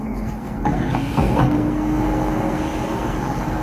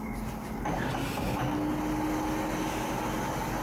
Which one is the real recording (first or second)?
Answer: second